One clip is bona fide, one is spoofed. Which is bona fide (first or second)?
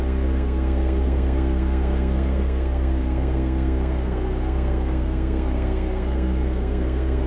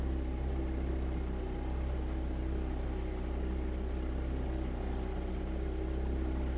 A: second